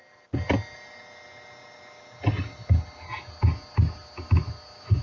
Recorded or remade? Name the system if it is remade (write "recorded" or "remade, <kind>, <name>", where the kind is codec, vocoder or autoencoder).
recorded